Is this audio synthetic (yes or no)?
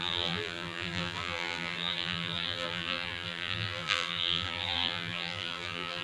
yes